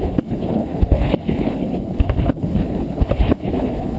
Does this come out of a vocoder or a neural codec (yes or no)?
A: yes